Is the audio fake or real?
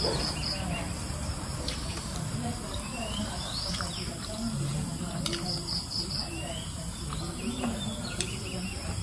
fake